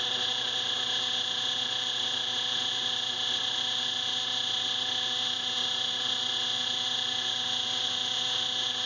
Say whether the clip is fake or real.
real